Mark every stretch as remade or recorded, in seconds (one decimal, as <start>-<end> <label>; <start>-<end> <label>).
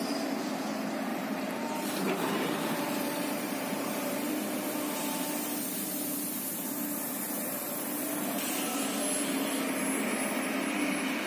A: 0.0-1.1 recorded; 1.1-4.3 remade; 4.3-5.7 recorded; 5.7-7.6 remade; 7.6-11.3 recorded